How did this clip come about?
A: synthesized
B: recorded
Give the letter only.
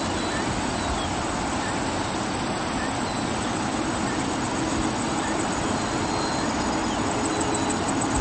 B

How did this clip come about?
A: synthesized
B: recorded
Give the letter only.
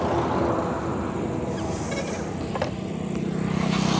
B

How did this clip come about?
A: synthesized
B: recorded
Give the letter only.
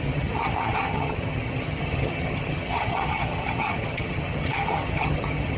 A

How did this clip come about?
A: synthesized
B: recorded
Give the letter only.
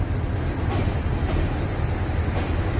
B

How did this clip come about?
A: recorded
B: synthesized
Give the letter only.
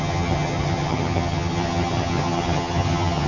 B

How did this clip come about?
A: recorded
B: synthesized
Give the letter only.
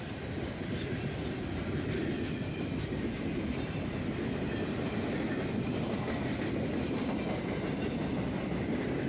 A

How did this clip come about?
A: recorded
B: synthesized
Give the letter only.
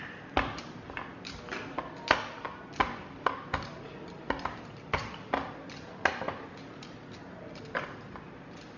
A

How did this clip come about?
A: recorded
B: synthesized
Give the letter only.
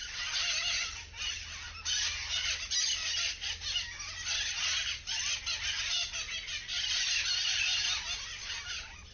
A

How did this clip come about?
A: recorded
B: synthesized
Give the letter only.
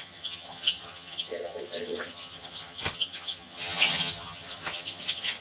B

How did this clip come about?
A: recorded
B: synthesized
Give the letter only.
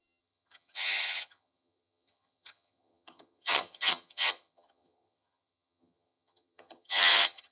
B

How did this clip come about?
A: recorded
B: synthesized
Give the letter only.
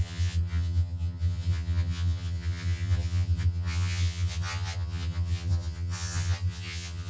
B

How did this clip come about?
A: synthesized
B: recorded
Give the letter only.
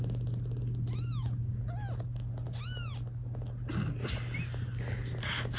B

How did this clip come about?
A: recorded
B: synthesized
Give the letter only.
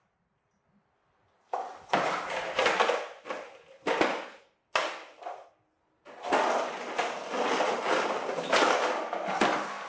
A